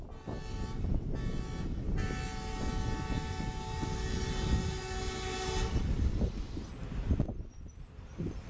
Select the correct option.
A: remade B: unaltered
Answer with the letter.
B